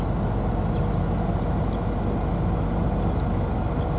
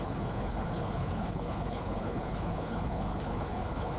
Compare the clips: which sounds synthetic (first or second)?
second